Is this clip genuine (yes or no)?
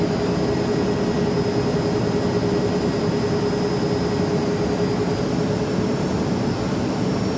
yes